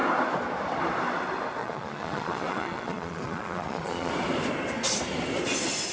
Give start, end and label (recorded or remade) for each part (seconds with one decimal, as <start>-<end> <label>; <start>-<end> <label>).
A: 0.0-1.6 recorded; 1.6-4.1 remade; 4.1-5.9 recorded